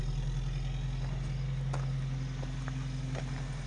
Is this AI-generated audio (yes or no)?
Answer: no